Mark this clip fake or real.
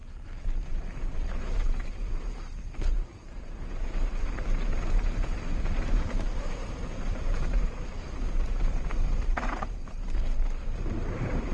fake